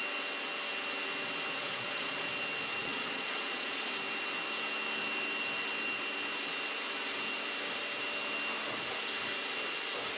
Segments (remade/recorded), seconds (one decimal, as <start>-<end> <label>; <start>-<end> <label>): 0.0-1.6 recorded; 1.6-2.3 remade; 2.3-2.8 recorded; 2.8-3.9 remade; 3.9-10.2 recorded